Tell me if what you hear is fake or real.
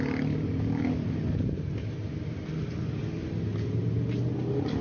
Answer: real